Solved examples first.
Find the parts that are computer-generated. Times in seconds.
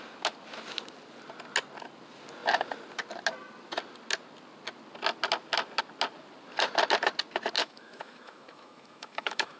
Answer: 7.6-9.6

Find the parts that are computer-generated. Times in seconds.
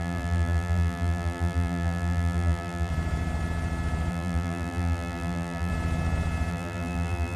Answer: 0.0-2.9; 4.1-5.7; 6.5-7.4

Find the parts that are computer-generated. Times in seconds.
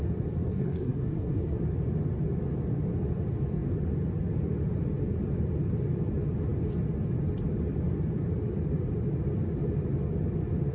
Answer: 0.5-1.6